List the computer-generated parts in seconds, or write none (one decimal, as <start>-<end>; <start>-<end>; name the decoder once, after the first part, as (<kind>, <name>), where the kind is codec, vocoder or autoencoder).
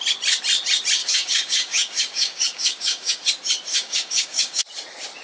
1.0-3.2 (codec, DAC); 3.7-4.6